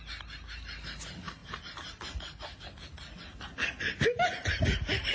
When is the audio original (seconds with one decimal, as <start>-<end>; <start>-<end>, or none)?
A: 0.0-5.1